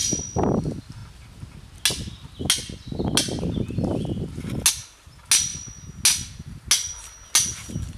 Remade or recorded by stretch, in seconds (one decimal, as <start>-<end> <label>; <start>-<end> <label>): 0.0-8.0 recorded